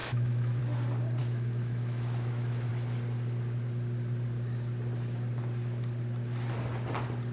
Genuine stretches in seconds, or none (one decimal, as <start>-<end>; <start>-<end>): 0.6-1.2; 2.7-7.3